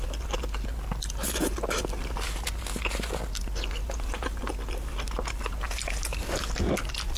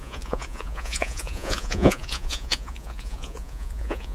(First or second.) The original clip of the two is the first